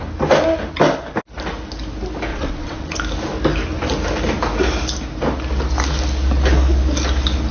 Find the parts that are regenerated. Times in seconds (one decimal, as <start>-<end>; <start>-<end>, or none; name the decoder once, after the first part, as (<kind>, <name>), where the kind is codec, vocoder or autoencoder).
2.3-2.9 (vocoder, WaveNeXt)